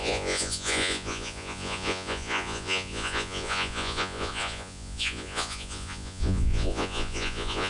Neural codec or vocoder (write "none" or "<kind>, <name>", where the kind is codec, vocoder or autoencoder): vocoder, Vocos